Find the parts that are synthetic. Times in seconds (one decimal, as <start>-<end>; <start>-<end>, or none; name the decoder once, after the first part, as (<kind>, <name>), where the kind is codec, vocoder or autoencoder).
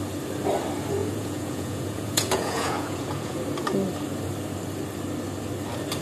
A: 1.0-3.4 (vocoder, Vocos)